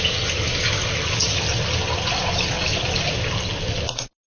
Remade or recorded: recorded